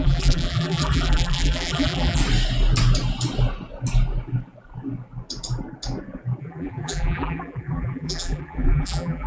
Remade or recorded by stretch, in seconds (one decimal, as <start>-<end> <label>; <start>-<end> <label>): 0.0-2.2 remade; 2.2-6.4 recorded; 6.4-9.3 remade